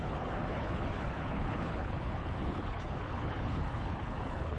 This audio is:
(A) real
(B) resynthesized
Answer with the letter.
B